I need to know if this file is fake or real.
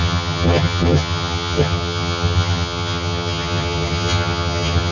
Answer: fake